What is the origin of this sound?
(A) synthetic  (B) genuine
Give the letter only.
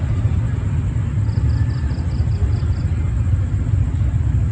B